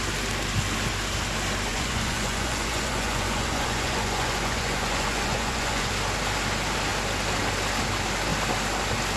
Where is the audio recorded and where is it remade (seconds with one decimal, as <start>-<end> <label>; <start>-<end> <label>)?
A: 0.0-1.7 recorded; 1.7-5.9 remade; 5.9-9.2 recorded